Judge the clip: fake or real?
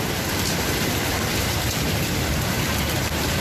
fake